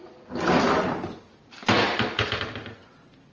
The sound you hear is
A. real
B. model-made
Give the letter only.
A